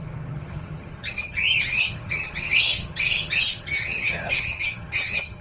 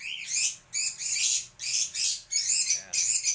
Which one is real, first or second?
second